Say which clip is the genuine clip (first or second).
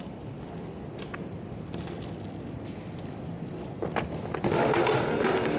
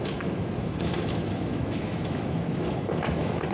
first